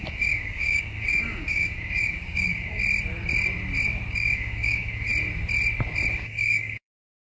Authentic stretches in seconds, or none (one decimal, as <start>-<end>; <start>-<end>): 2.8-4.1; 5.1-6.1